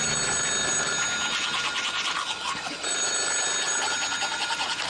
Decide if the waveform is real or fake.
real